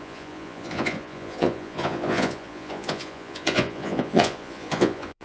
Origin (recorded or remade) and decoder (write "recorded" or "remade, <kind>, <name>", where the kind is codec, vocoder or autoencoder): remade, vocoder, Vocos